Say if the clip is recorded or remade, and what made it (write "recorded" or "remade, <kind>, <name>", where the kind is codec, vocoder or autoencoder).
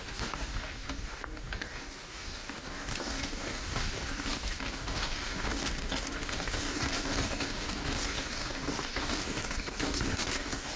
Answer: remade, codec, DAC